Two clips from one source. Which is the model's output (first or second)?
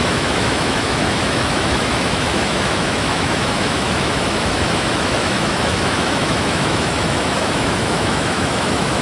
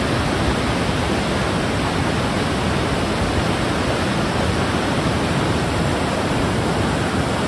first